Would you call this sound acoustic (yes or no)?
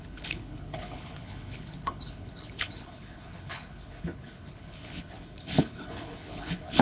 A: no